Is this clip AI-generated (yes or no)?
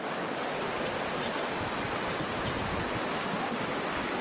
no